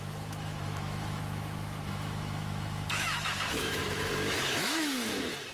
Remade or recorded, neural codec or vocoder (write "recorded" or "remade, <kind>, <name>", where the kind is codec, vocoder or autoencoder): remade, autoencoder, DAC-VAE